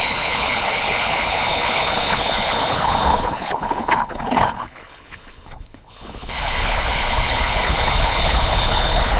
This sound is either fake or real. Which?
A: fake